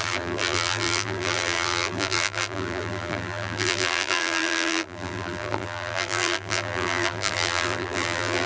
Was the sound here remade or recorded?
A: remade